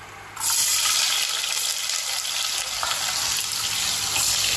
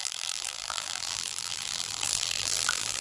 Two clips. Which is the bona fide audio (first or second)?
first